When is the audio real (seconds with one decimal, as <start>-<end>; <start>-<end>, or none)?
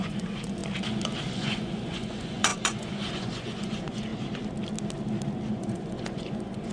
0.6-1.3; 4.1-5.5